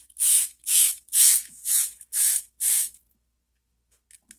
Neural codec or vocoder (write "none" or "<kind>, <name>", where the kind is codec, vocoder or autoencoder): autoencoder, DAC-VAE